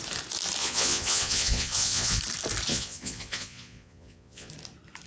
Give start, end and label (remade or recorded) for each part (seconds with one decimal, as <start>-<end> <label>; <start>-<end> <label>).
0.0-0.6 recorded; 0.6-2.2 remade; 2.2-2.7 recorded; 2.7-4.5 remade; 4.5-5.1 recorded